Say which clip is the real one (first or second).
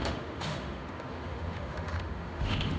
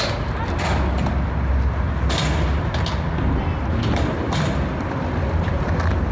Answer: second